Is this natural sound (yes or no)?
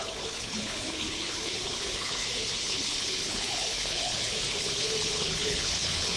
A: no